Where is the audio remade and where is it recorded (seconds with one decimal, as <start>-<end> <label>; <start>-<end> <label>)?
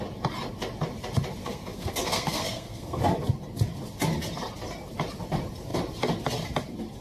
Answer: 0.0-1.4 recorded; 1.4-3.0 remade; 3.0-7.0 recorded